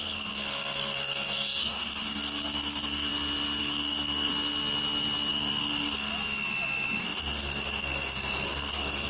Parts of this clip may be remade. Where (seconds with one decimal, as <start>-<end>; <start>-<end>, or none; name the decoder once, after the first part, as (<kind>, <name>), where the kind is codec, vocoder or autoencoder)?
0.0-3.1 (codec, SNAC); 3.6-4.3; 5.3-6.1; 7.0-9.1